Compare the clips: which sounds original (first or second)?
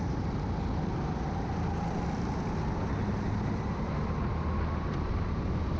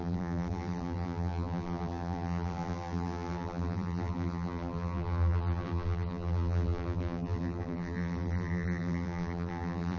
first